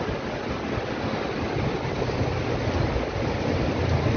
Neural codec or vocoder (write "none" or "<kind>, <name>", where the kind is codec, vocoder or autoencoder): none